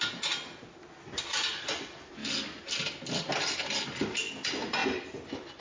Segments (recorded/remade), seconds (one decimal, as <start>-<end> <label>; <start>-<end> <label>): 0.0-5.6 recorded